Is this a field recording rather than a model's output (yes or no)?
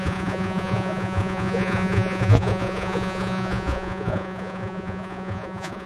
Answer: no